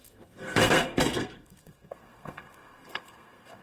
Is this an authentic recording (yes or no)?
no